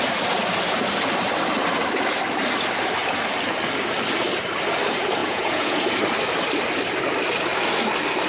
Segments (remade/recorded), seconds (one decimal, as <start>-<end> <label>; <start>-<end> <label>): 0.0-5.2 recorded; 5.2-5.8 remade; 5.8-8.3 recorded

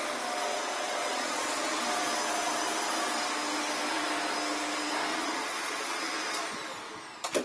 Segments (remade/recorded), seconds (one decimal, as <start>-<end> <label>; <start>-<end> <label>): 0.0-0.5 recorded; 0.5-1.8 remade; 1.8-5.1 recorded; 5.1-6.1 remade; 6.1-7.4 recorded